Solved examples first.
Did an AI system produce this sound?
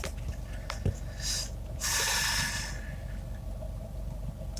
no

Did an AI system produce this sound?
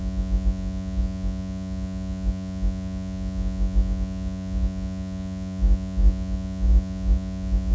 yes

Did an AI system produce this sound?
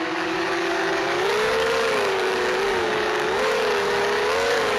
yes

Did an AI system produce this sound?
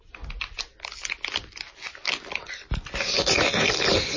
no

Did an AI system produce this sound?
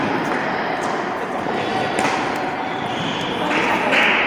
no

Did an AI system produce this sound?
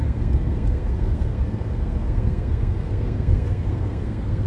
yes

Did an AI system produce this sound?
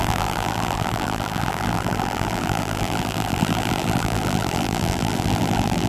yes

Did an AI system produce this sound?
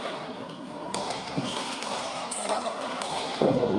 yes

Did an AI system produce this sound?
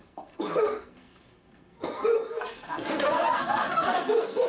yes